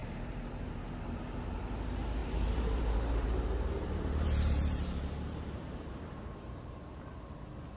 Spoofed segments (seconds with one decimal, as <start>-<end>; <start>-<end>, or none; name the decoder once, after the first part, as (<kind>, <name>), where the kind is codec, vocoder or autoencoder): 0.0-1.2 (vocoder, BigVGAN v2); 2.2-6.9